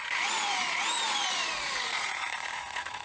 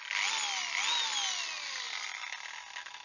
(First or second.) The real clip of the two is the second